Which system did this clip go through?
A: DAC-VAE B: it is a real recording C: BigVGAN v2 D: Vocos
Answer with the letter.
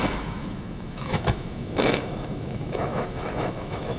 A